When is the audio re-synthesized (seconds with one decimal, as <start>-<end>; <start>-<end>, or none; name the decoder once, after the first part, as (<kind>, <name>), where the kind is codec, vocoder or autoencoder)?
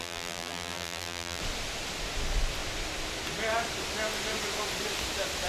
0.0-1.4 (vocoder, BigVGAN v2)